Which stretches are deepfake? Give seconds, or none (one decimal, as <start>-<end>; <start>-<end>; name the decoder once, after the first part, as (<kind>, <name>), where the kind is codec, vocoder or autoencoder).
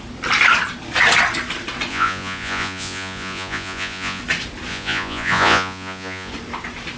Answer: 1.9-4.2 (vocoder, Vocos); 4.7-6.3